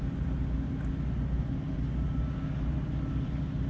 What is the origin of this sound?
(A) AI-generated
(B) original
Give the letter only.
B